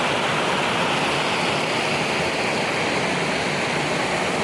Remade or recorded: recorded